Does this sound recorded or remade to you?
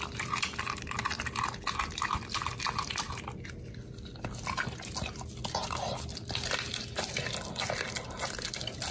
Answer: recorded